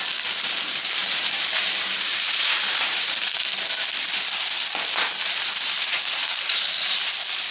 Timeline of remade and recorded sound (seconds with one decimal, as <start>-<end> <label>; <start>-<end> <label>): 0.0-1.0 recorded; 1.0-3.4 remade; 3.4-5.9 recorded; 5.9-7.0 remade; 7.0-7.5 recorded